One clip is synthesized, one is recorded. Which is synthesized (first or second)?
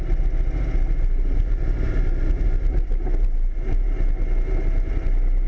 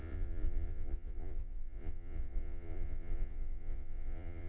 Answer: second